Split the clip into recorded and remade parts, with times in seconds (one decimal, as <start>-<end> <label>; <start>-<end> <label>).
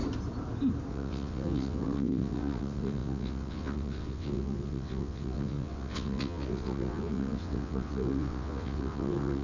0.0-0.9 recorded; 0.9-9.4 remade